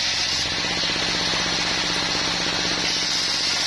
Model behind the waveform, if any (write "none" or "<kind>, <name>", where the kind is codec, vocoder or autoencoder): none